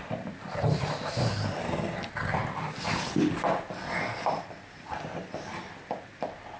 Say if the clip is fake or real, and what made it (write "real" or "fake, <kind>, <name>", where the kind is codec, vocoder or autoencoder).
real